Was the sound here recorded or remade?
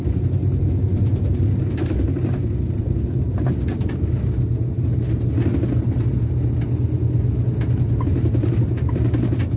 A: recorded